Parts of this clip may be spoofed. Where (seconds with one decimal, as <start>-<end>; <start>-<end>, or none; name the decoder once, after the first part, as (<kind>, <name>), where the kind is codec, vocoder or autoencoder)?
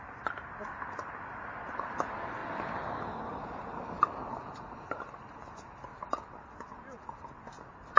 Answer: none